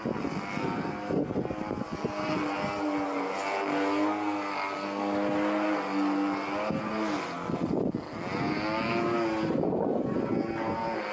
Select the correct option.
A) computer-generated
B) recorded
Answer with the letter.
B